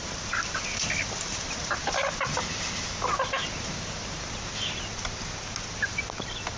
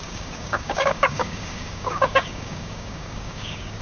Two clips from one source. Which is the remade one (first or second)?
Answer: second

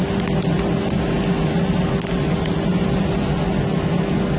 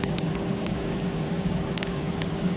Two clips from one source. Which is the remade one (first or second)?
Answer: second